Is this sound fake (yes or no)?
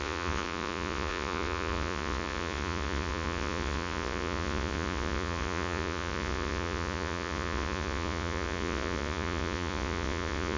yes